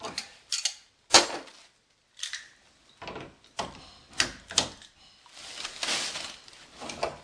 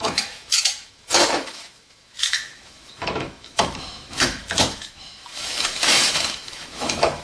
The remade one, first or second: second